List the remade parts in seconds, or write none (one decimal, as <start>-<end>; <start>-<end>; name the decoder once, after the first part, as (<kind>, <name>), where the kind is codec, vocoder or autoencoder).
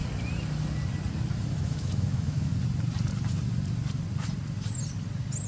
1.5-2.5 (autoencoder, DAC-VAE)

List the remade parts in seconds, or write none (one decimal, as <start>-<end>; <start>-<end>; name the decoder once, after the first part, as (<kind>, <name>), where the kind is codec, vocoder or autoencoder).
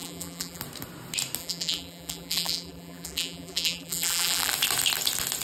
0.0-0.6 (vocoder, BigVGAN v2); 1.4-4.5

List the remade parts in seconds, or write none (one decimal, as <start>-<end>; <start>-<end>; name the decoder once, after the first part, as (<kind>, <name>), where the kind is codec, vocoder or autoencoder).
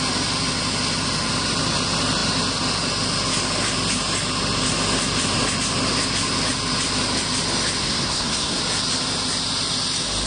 7.8-8.6 (codec, SNAC)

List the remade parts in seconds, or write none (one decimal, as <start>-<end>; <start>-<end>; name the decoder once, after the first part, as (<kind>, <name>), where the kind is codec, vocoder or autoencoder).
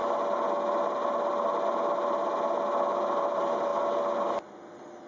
3.1-3.7 (vocoder, BigVGAN v2)